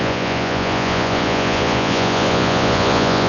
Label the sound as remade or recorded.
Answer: remade